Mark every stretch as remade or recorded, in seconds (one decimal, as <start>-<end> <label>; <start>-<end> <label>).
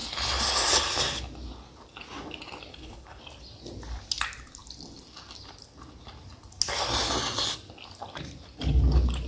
0.0-2.7 recorded; 2.7-3.2 remade; 3.2-9.3 recorded